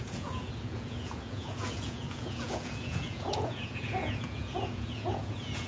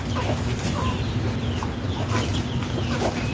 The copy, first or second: first